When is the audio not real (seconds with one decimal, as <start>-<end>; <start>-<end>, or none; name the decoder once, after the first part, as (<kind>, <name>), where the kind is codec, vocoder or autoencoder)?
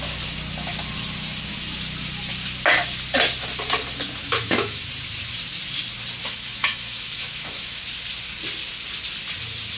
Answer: 4.2-4.9 (autoencoder, DAC-VAE); 6.2-7.8